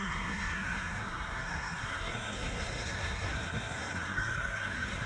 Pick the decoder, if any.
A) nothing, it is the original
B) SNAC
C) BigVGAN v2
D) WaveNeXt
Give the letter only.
B